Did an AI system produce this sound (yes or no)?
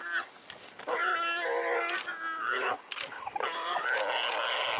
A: no